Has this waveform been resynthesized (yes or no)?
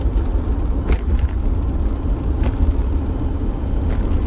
no